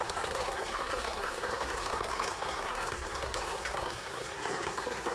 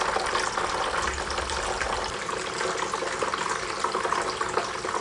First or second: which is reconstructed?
first